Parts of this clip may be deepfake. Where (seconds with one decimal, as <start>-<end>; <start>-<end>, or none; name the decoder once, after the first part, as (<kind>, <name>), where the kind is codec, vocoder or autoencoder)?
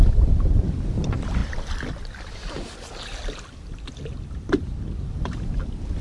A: none